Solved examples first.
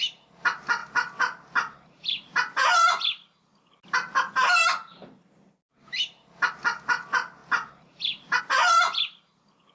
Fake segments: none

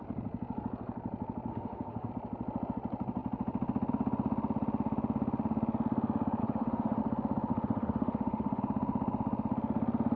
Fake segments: 1.5-2.1 (autoencoder, DAC-VAE); 6.4-7.0; 7.5-8.6

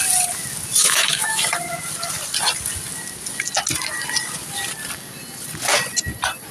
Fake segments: 0.8-1.4 (autoencoder, DAC-VAE)

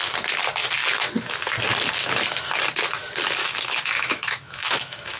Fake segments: 3.4-5.2 (autoencoder, DAC-VAE)

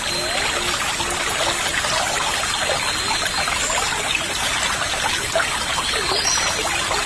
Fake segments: none

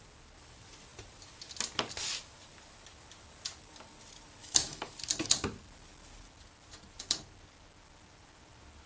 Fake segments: 4.4-4.9 (autoencoder, DAC-VAE)

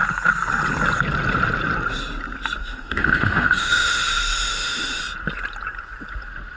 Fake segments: 2.6-5.0 (autoencoder, DAC-VAE)

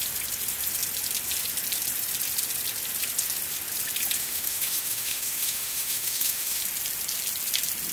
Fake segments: 4.2-6.6 (autoencoder, DAC-VAE)